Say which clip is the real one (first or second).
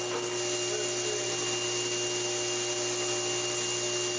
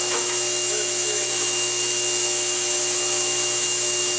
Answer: first